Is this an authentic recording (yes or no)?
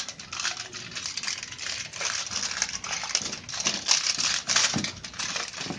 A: yes